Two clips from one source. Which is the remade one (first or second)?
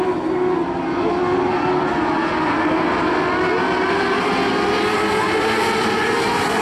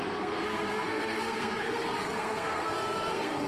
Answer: second